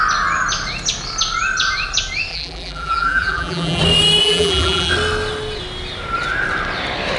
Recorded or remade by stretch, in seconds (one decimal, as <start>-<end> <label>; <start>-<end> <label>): 0.0-2.3 recorded; 2.3-3.8 remade; 3.8-4.2 recorded; 4.2-4.9 remade; 4.9-7.2 recorded